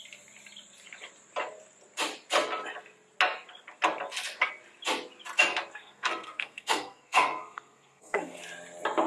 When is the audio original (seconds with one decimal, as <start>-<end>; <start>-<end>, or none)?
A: 0.0-5.7; 8.4-9.1

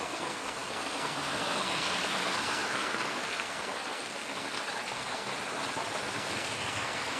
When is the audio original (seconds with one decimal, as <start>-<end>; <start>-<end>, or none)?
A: 5.3-6.1

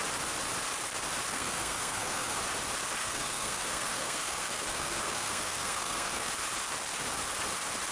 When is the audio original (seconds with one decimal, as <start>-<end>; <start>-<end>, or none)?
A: 0.0-1.3; 2.4-3.0; 6.3-7.9

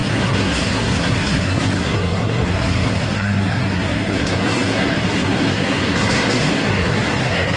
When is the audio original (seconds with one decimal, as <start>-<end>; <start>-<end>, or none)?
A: none